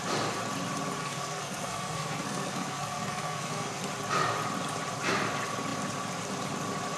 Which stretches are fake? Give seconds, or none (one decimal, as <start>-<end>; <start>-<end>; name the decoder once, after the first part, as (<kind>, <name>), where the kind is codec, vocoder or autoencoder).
1.0-3.8 (codec, SNAC)